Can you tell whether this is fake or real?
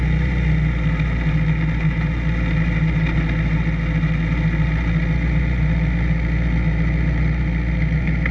real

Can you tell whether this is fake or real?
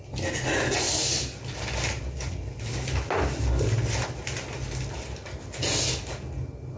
real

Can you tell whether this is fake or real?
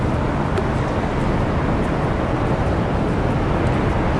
real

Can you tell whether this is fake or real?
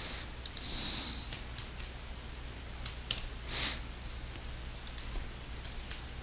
real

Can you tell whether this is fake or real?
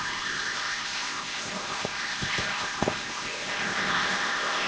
fake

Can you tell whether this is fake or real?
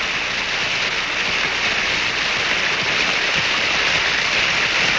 real